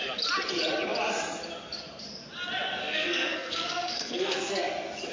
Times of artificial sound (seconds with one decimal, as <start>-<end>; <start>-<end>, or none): 2.8-4.6